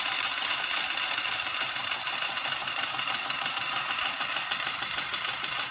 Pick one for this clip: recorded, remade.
recorded